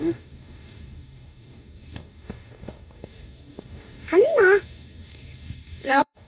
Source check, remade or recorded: remade